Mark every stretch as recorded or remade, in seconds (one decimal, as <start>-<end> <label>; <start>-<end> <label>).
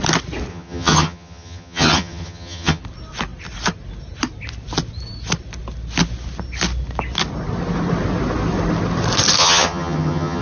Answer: 0.0-0.5 recorded; 0.5-2.8 remade; 2.8-9.4 recorded; 9.4-10.4 remade